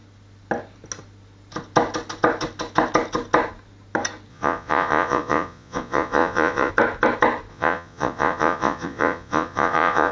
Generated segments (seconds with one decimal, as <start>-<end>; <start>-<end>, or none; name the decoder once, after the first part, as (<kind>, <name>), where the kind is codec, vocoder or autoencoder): 4.3-6.7 (vocoder, Vocos); 7.5-10.1